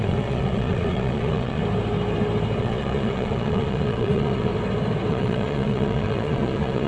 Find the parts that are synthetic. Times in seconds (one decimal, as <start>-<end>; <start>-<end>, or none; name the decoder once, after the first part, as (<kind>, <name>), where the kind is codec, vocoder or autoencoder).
0.0-1.6 (vocoder, Vocos); 2.6-4.5; 5.1-6.9